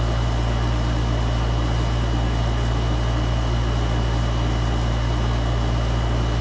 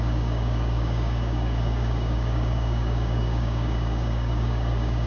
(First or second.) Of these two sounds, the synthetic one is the second